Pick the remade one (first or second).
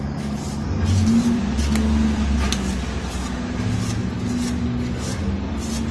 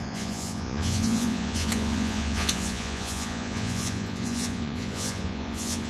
second